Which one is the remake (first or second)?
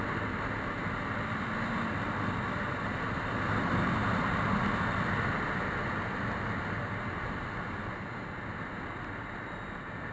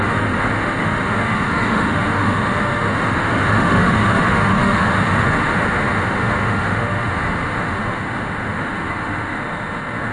second